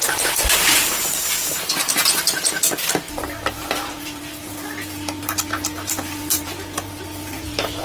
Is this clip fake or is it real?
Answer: fake